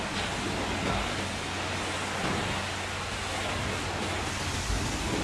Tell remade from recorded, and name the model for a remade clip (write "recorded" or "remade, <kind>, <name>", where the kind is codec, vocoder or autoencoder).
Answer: recorded